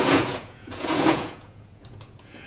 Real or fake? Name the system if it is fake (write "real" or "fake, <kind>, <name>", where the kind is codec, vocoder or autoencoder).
fake, vocoder, Vocos